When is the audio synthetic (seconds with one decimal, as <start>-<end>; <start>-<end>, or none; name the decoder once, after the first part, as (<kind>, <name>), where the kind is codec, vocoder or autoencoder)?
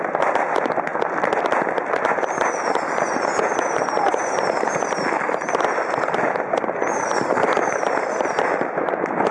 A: 4.1-8.3 (vocoder, BigVGAN v2)